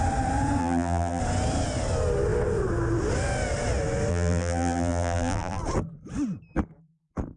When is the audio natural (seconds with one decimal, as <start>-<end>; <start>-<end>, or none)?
0.0-0.6; 1.2-4.1; 5.6-7.4